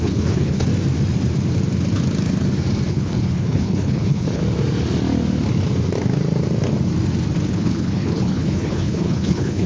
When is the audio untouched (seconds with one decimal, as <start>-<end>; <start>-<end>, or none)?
0.7-2.9; 4.4-7.5